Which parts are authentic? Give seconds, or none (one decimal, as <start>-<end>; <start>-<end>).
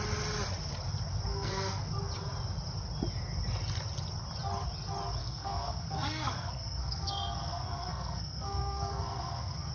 0.0-1.3; 1.9-5.2